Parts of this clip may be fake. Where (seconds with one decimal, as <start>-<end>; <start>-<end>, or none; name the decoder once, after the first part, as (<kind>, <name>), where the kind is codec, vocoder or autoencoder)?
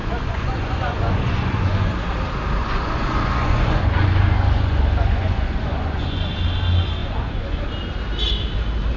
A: 0.0-1.9 (vocoder, Vocos); 2.6-6.3; 7.0-7.6